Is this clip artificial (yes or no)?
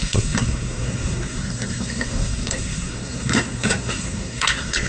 yes